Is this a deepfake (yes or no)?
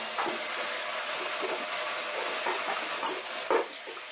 no